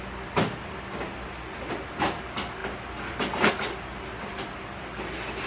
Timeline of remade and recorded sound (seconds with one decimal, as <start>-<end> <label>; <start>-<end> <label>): 0.0-5.5 recorded